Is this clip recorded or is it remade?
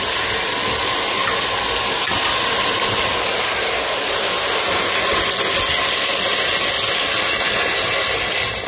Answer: recorded